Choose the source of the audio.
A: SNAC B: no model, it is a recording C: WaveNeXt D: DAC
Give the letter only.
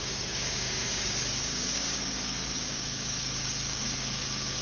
D